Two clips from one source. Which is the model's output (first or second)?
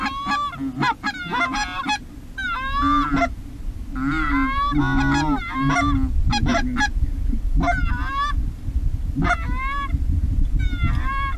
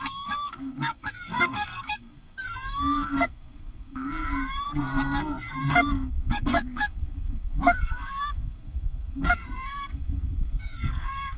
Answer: second